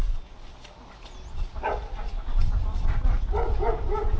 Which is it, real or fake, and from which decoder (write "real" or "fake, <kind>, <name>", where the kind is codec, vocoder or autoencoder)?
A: real